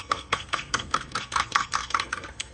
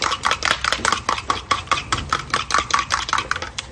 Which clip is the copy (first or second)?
first